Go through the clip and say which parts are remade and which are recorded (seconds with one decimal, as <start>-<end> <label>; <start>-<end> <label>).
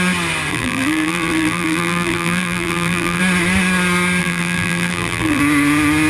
0.0-0.5 recorded; 0.5-3.2 remade; 3.2-4.2 recorded; 4.2-5.4 remade; 5.4-6.1 recorded